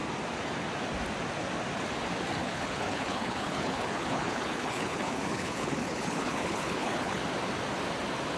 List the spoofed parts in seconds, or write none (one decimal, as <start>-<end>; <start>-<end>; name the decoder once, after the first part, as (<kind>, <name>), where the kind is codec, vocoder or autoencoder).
2.4-7.2 (codec, HILCodec)

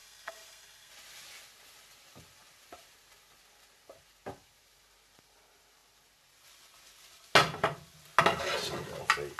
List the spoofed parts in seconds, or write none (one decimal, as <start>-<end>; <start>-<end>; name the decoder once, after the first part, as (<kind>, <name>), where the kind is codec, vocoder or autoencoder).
0.0-0.9 (codec, SNAC)

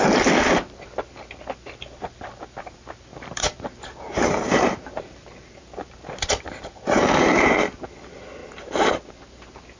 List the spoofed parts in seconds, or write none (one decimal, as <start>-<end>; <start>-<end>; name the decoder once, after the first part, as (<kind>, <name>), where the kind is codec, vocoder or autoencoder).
3.1-7.6 (vocoder, BigVGAN v2); 8.4-9.1